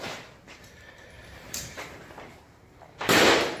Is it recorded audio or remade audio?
remade